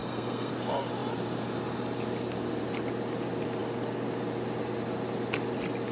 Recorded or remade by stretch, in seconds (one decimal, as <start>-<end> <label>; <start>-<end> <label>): 0.0-0.5 remade; 0.5-5.9 recorded